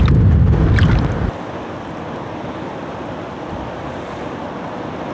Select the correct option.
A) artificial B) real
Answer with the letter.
B